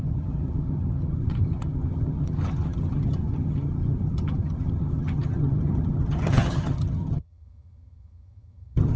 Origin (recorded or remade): remade